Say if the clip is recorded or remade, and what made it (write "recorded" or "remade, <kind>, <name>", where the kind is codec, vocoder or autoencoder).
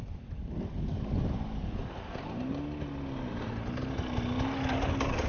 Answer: recorded